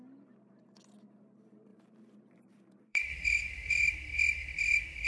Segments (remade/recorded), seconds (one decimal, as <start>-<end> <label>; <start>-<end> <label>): 0.0-1.7 recorded; 1.7-3.4 remade; 3.4-5.1 recorded